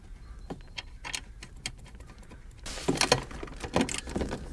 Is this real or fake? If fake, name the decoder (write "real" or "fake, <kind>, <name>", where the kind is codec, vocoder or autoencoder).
real